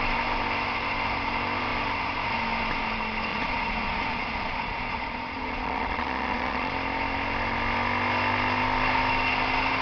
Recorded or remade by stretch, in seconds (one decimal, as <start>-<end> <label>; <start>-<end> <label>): 0.0-3.3 recorded; 3.3-6.7 remade; 6.7-9.8 recorded